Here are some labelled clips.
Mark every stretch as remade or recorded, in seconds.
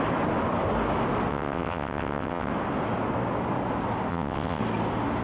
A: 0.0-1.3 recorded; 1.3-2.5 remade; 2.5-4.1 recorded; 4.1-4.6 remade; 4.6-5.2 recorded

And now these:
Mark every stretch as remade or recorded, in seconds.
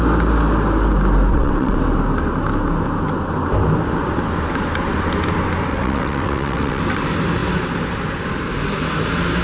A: 0.0-1.3 recorded; 1.3-1.8 remade; 1.8-5.7 recorded; 5.7-6.8 remade; 6.8-9.4 recorded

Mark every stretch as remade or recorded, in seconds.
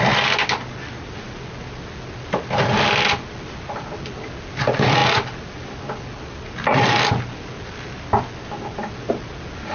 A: 0.0-9.7 recorded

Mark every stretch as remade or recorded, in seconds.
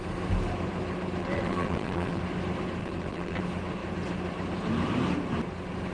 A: 0.0-1.2 recorded; 1.2-2.2 remade; 2.2-2.8 recorded; 2.8-3.4 remade; 3.4-5.9 recorded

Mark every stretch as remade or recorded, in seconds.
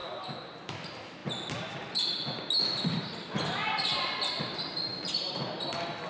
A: 0.0-6.1 recorded